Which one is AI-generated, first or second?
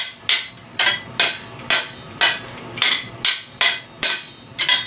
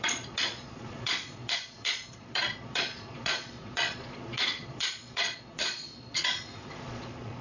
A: second